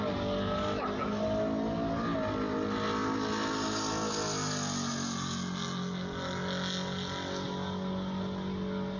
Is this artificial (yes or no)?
no